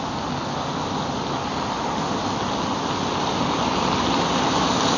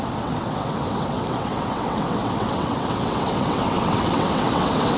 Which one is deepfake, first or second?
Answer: second